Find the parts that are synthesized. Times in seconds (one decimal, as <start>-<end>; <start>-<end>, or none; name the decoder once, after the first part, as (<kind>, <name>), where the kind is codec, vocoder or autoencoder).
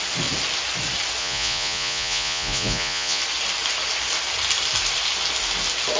1.2-3.2 (vocoder, Vocos)